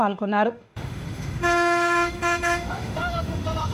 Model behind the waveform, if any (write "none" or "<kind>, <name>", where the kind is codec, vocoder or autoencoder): autoencoder, DAC-VAE